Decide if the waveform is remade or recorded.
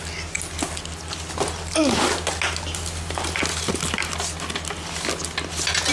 recorded